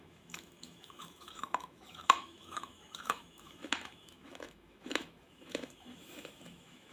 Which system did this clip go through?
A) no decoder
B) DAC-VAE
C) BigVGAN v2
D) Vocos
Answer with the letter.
B